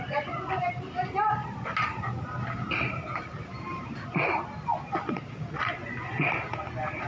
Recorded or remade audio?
recorded